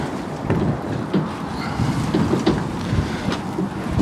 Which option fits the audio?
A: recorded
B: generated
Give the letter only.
A